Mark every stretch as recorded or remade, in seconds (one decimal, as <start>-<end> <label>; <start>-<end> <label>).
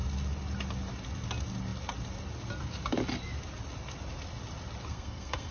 0.0-4.9 recorded; 4.9-5.5 remade